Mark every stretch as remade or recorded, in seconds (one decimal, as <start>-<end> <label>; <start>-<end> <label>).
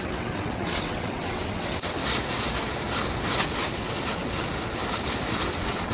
0.0-2.0 remade; 2.0-5.5 recorded; 5.5-5.9 remade